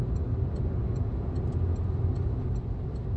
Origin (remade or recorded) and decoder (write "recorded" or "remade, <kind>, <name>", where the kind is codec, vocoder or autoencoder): recorded